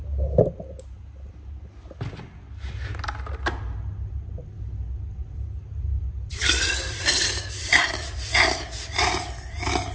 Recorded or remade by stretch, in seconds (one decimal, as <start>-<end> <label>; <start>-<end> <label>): 0.0-5.1 recorded; 5.1-9.0 remade; 9.0-9.9 recorded